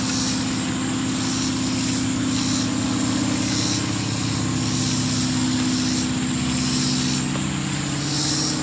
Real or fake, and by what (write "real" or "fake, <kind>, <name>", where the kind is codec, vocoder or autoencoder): real